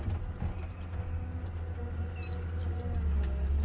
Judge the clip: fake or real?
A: real